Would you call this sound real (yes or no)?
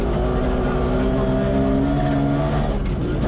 yes